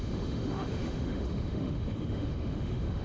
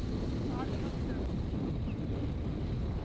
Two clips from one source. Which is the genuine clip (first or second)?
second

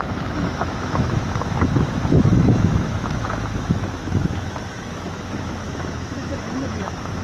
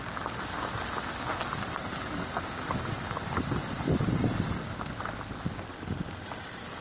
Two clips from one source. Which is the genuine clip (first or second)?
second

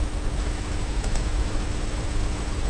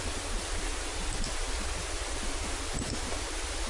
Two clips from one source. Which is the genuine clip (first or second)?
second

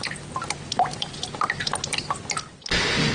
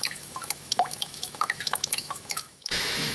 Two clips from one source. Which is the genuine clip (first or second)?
first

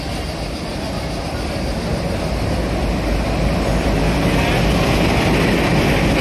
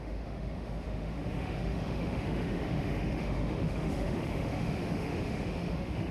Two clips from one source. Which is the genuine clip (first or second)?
first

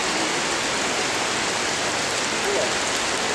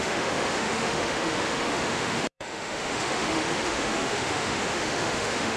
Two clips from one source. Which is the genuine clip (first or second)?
first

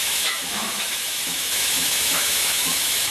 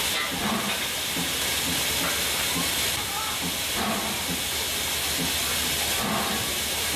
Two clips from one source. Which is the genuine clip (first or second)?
second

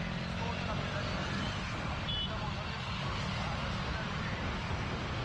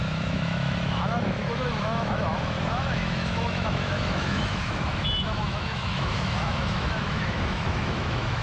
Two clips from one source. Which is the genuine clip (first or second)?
first